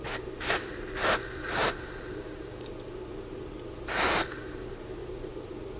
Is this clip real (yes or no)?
yes